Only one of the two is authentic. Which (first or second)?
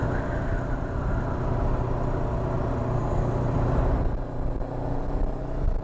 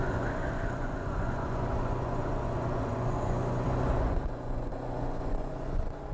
first